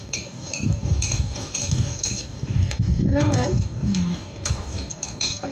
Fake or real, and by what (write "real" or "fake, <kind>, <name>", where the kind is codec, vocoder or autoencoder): fake, codec, DAC